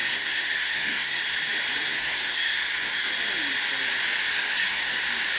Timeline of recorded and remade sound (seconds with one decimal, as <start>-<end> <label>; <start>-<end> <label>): 0.0-1.2 remade; 1.2-1.9 recorded; 1.9-3.1 remade; 3.1-4.3 recorded; 4.3-5.0 remade; 5.0-5.4 recorded